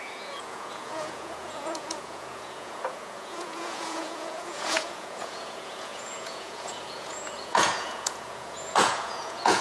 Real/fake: fake